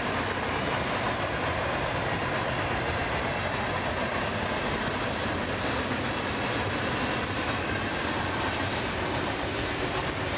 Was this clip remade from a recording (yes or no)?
no